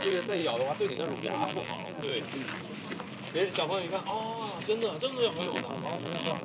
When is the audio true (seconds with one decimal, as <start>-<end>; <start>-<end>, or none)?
0.4-0.9; 2.1-5.4